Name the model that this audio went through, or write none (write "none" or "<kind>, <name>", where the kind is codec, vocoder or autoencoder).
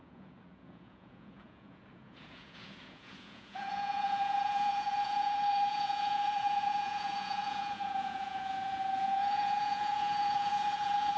vocoder, Vocos